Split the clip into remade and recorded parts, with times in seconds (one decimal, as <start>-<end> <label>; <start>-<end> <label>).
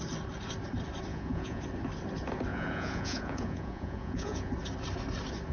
0.0-1.1 recorded; 1.1-1.6 remade; 1.6-2.5 recorded; 2.5-4.5 remade; 4.5-5.5 recorded